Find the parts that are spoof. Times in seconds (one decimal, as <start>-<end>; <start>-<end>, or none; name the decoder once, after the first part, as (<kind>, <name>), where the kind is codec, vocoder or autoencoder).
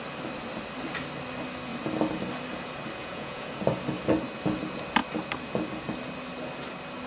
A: 3.0-3.6 (vocoder, Vocos)